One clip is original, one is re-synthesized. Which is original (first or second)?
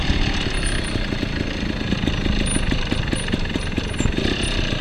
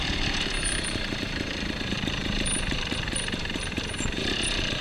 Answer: first